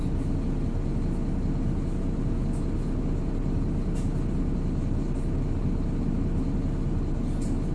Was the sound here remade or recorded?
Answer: recorded